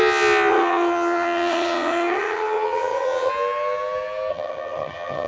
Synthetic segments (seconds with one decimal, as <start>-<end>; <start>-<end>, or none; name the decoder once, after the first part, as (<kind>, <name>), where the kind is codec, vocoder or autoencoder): 0.5-3.3 (vocoder, HiFi-GAN); 4.3-5.3

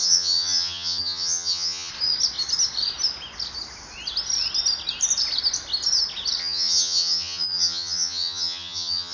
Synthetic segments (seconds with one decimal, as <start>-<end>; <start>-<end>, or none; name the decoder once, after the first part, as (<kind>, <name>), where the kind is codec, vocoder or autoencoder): 0.0-1.9 (vocoder, HiFi-GAN); 6.4-9.1